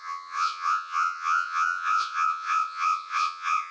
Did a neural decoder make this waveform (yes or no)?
yes